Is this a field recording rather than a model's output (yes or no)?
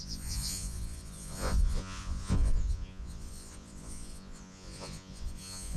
no